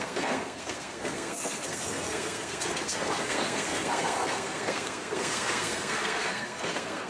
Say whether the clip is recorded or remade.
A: remade